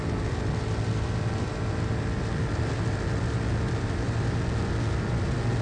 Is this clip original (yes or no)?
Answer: yes